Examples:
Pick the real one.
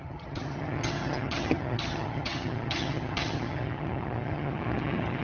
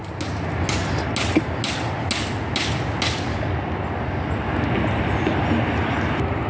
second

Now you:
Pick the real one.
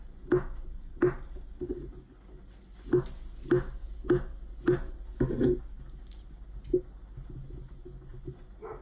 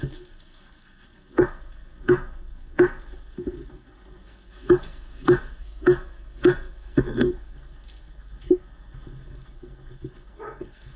first